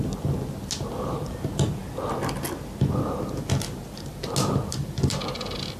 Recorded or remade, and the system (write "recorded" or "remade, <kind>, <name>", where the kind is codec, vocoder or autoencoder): recorded